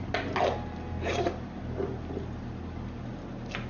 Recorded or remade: recorded